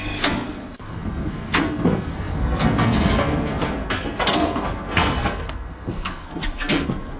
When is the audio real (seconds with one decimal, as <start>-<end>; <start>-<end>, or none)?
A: none